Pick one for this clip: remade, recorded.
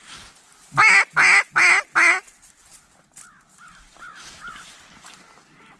recorded